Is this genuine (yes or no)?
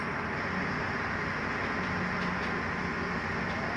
yes